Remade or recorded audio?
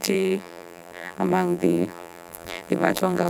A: remade